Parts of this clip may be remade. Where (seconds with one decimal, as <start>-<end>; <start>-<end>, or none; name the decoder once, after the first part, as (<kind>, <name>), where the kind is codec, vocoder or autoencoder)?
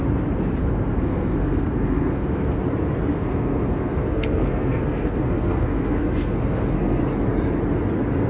0.6-2.6 (codec, SNAC); 3.1-7.0